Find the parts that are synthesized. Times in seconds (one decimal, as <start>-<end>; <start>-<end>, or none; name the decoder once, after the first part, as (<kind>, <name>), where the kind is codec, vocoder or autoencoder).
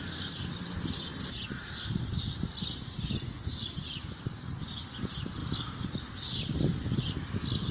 none